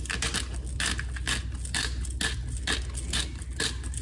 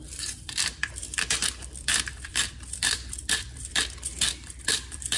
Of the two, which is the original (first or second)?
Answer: first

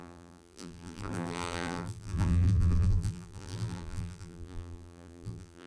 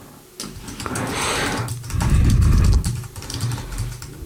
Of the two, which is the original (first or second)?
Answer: second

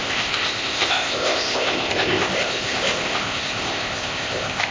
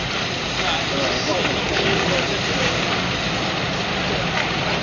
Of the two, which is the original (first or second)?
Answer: second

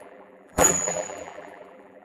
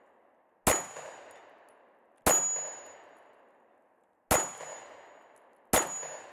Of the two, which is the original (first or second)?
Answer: second